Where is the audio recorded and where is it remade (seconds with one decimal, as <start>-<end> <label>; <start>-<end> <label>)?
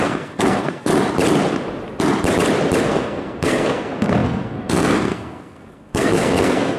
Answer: 0.0-0.9 remade; 0.9-2.8 recorded; 2.8-6.8 remade